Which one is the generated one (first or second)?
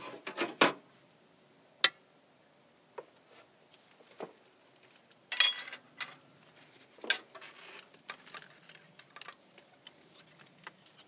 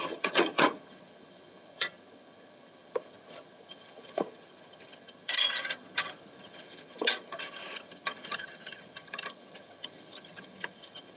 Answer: second